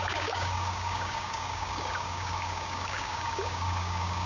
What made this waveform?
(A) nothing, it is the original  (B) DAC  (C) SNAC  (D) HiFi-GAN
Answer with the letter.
B